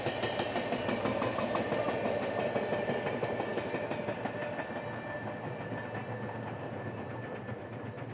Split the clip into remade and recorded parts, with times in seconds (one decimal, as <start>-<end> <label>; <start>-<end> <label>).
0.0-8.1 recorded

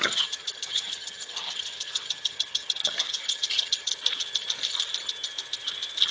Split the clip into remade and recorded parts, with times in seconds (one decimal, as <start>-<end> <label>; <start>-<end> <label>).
0.0-3.9 remade; 3.9-6.1 recorded

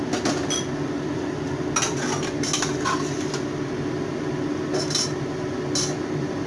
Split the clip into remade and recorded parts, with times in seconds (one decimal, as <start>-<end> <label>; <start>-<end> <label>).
0.0-6.5 recorded

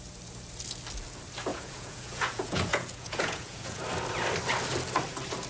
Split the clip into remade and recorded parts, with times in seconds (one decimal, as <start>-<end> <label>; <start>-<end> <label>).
0.0-1.5 recorded; 1.5-3.8 remade; 3.8-5.5 recorded

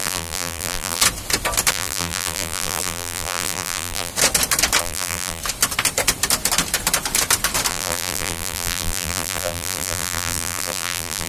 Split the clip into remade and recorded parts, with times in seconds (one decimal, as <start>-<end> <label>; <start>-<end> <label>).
0.0-1.0 remade; 1.0-1.7 recorded; 1.7-4.1 remade; 4.1-4.8 recorded; 4.8-5.4 remade; 5.4-7.7 recorded; 7.7-11.3 remade

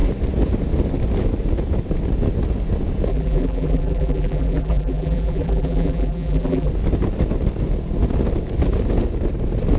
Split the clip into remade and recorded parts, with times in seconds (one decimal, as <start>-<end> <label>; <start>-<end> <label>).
0.0-3.1 recorded; 3.1-6.7 remade; 6.7-9.8 recorded